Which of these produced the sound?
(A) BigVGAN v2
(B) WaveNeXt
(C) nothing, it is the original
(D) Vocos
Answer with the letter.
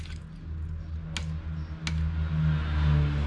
C